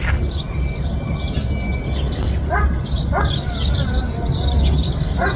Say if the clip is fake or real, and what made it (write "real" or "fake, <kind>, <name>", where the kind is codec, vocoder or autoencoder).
real